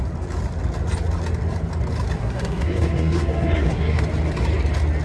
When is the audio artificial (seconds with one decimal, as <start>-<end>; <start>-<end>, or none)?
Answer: 2.2-4.0